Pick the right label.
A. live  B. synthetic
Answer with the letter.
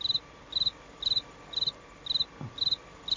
A